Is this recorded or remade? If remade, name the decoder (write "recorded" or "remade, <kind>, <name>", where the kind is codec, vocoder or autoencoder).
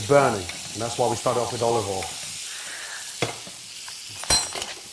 recorded